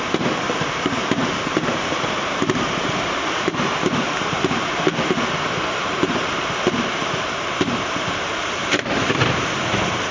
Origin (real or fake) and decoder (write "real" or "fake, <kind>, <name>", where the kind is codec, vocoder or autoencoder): fake, vocoder, BigVGAN v2